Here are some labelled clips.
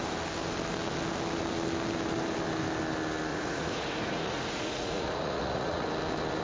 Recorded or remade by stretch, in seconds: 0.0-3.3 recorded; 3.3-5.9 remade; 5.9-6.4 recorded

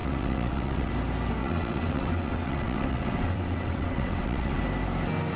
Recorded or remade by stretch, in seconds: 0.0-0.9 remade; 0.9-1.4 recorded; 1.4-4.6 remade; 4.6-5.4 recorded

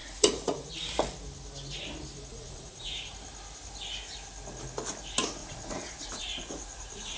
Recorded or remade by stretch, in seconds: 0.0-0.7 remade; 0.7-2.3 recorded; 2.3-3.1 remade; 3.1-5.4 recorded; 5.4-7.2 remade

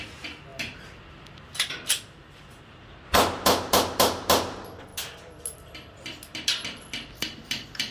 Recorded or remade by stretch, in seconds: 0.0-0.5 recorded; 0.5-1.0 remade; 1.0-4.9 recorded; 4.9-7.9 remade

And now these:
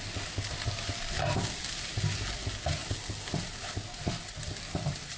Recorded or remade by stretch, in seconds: 0.0-5.2 recorded

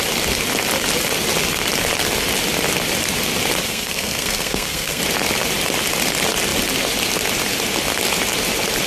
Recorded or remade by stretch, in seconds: 0.0-3.6 recorded; 3.6-5.0 remade; 5.0-8.9 recorded